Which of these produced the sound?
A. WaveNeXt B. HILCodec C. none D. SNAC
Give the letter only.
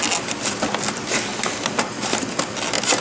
C